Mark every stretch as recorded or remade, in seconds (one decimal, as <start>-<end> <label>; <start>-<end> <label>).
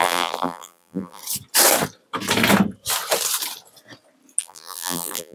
0.0-1.2 remade; 1.2-4.4 recorded; 4.4-5.3 remade